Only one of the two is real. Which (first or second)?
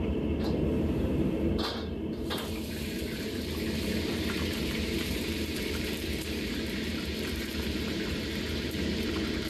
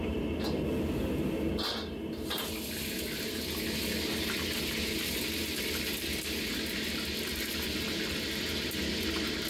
second